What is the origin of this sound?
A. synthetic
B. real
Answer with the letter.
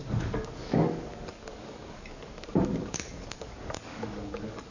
A